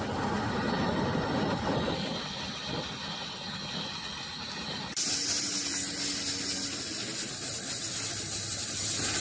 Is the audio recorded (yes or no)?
yes